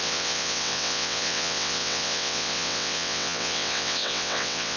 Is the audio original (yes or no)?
no